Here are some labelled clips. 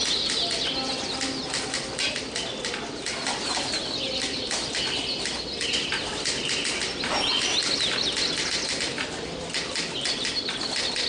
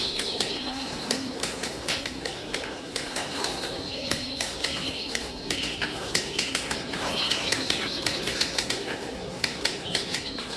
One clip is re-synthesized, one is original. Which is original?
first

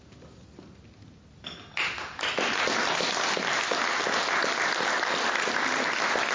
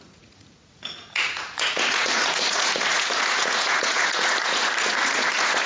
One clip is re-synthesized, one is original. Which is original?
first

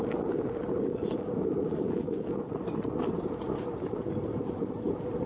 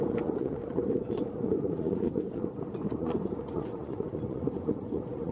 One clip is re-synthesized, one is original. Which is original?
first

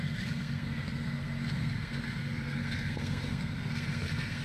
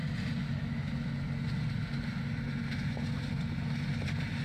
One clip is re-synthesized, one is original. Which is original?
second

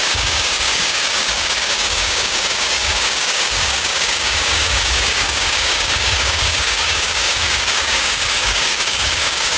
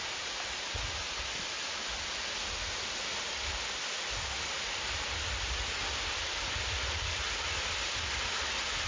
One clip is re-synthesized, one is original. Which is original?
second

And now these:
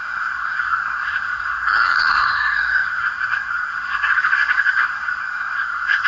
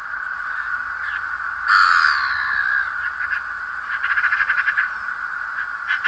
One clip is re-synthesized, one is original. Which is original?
second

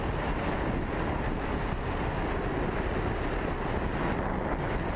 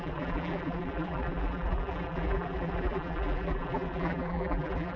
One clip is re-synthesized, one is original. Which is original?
first